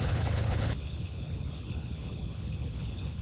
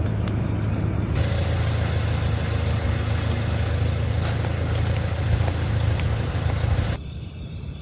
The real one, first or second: second